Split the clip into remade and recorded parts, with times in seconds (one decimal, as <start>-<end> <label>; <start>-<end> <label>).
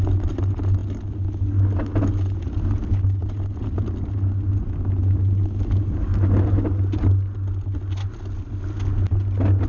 0.0-9.7 recorded